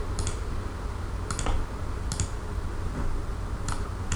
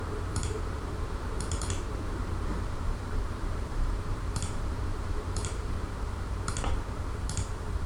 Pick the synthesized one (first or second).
second